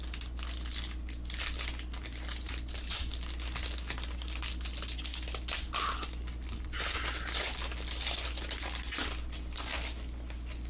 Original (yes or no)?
yes